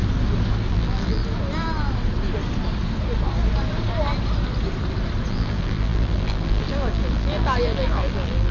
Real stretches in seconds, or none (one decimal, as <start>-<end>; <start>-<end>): 0.0-0.7; 1.2-5.3